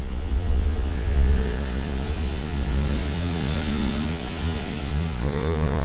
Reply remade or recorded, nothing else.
remade